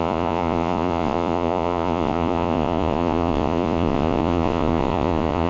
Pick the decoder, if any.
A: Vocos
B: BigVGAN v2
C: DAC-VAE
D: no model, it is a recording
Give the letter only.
A